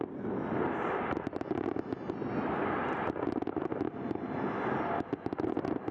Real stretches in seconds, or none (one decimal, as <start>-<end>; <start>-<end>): 0.0-5.9